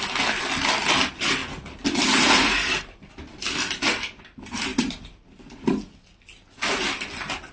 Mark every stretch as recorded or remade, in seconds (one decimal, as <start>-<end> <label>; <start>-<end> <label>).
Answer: 0.0-7.5 recorded